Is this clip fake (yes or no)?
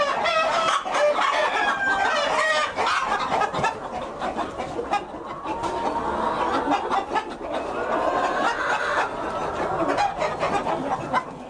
no